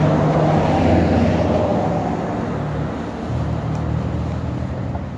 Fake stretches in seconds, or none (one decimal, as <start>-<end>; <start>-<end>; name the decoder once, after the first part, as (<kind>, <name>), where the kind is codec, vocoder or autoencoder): none